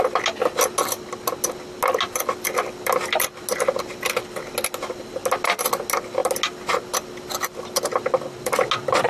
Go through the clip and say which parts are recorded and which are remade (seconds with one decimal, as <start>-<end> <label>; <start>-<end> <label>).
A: 0.0-9.1 recorded